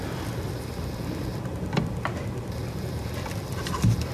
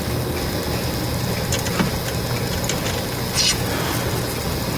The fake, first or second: first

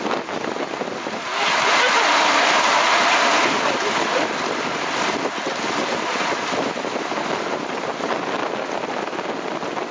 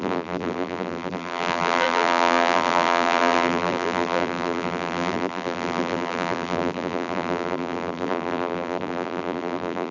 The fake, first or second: second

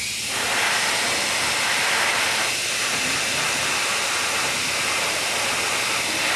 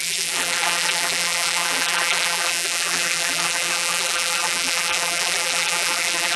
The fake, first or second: second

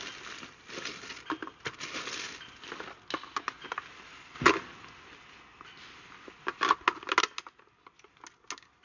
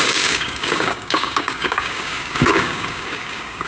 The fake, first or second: second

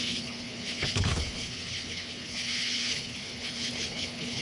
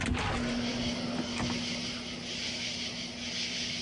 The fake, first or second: first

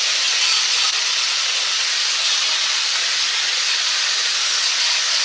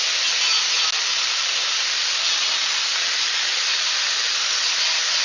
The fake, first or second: first